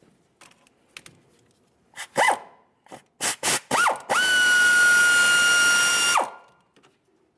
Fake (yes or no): no